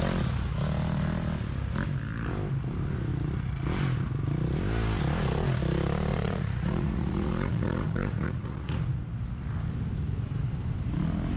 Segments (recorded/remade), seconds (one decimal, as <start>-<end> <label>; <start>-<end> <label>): 0.0-6.1 recorded; 6.1-9.0 remade; 9.0-11.4 recorded